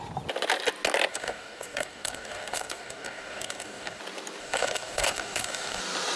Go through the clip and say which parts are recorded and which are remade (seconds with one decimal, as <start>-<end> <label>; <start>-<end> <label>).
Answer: 0.0-1.1 recorded; 1.1-4.0 remade; 4.0-4.4 recorded; 4.4-5.8 remade; 5.8-6.2 recorded

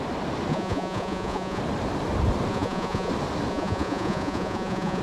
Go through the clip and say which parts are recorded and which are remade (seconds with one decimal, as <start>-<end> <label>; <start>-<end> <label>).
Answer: 0.0-0.5 recorded; 0.5-1.6 remade; 1.6-2.5 recorded; 2.5-3.1 remade; 3.1-3.5 recorded; 3.5-5.0 remade

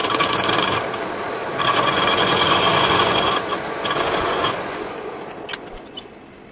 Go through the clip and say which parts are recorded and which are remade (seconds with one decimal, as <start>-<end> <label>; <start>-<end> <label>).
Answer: 0.0-0.8 remade; 0.8-1.4 recorded; 1.4-5.2 remade; 5.2-6.5 recorded

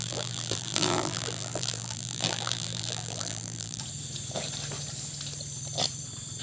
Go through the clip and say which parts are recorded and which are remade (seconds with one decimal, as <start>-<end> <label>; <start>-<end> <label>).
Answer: 0.0-3.8 remade; 3.8-6.4 recorded

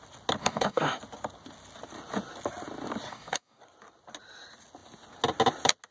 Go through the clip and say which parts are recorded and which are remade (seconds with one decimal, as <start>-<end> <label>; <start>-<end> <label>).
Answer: 0.0-0.4 recorded; 0.4-1.0 remade; 1.0-3.1 recorded; 3.1-3.6 remade; 3.6-5.9 recorded

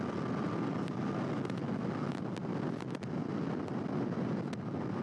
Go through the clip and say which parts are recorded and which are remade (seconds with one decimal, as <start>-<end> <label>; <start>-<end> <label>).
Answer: 0.0-5.0 recorded